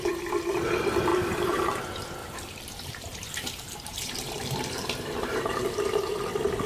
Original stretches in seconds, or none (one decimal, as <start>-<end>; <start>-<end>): 0.0-1.1; 1.6-2.2; 6.2-6.7